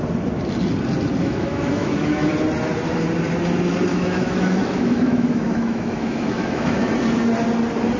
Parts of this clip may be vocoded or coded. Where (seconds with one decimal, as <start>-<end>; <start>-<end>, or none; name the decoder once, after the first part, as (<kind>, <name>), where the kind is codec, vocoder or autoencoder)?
1.2-2.3 (autoencoder, DAC-VAE); 3.9-6.9